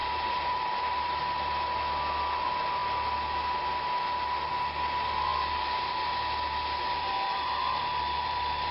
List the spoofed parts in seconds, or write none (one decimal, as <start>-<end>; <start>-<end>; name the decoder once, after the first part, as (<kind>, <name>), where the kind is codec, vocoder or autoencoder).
0.0-1.2 (vocoder, BigVGAN v2); 5.3-6.1; 6.9-8.7